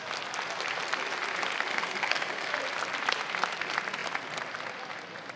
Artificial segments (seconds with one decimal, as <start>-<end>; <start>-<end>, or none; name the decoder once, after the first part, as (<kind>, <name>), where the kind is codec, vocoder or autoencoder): 1.7-2.5 (codec, SNAC)